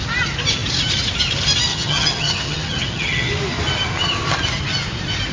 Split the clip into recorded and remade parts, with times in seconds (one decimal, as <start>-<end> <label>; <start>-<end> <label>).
0.0-1.7 recorded; 1.7-3.3 remade; 3.3-5.3 recorded